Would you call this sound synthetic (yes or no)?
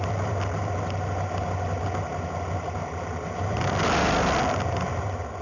no